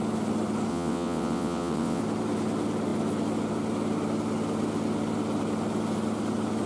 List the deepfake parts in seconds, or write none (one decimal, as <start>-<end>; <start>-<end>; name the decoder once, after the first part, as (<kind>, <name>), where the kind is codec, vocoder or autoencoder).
0.7-2.0 (vocoder, WaveNeXt)